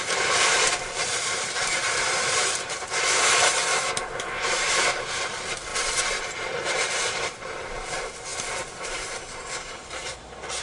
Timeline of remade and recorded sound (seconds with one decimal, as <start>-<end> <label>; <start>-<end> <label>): 0.0-5.7 remade; 5.7-6.2 recorded; 6.2-10.6 remade